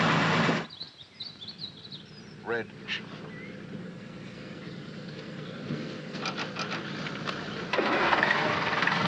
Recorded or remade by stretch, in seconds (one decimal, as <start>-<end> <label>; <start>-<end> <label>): 0.0-3.8 recorded; 3.8-6.2 remade; 6.2-7.7 recorded; 7.7-9.1 remade